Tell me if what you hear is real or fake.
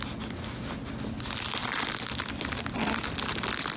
real